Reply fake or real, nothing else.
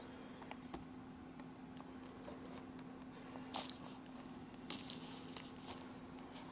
real